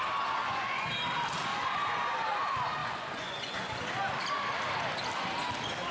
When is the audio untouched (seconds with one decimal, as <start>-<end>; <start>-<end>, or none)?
0.0-0.4; 0.9-1.5; 2.4-2.8; 3.7-5.9

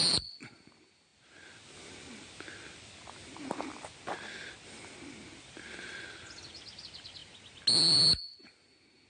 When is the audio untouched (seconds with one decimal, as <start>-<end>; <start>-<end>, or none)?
0.0-9.1

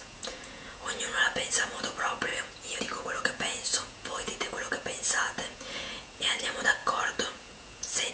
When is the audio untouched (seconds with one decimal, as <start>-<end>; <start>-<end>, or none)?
none

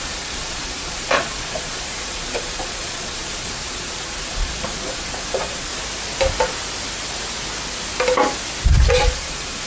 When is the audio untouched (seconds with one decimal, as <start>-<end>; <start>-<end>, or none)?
5.7-8.9

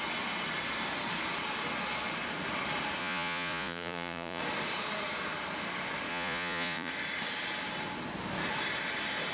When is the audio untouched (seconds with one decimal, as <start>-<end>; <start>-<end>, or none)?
0.0-3.0; 4.4-6.1; 6.9-9.3

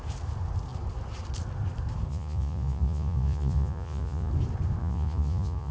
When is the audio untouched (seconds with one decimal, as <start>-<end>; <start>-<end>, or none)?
0.0-2.1; 4.3-4.8

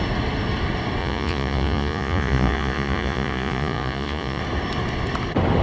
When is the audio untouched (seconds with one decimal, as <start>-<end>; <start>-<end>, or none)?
0.0-1.0; 4.4-5.6